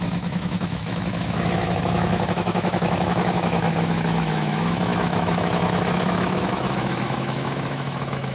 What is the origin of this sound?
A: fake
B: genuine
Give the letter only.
A